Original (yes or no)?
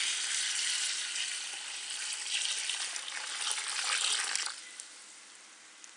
yes